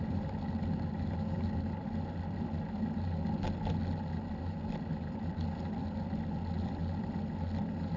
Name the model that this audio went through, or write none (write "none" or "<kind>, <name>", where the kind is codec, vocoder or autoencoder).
none